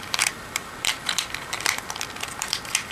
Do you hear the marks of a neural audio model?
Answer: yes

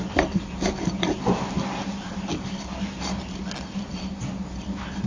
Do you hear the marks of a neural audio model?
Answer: no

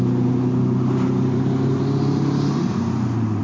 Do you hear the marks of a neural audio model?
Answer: no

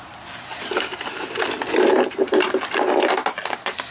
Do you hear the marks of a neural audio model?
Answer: yes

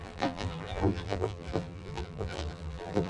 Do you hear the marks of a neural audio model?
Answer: yes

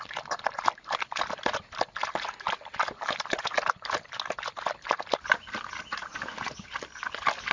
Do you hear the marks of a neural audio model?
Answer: no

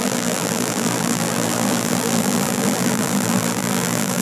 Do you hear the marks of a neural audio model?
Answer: yes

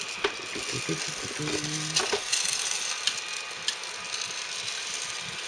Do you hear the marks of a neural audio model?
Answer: no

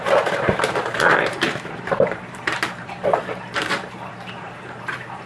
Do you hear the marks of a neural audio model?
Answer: yes